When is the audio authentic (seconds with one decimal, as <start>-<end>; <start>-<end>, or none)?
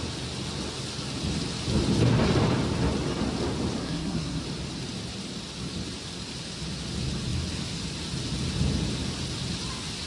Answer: 0.0-3.8; 4.4-10.1